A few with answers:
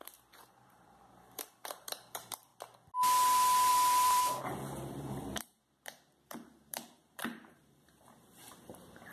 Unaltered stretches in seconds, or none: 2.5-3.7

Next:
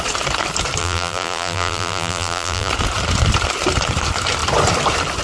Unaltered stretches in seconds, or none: 0.0-0.8; 2.7-5.2

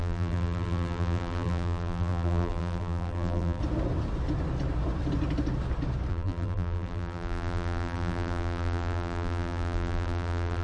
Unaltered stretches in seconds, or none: 3.6-6.1